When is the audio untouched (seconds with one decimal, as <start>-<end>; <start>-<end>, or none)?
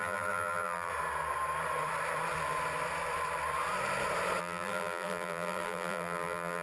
0.9-4.4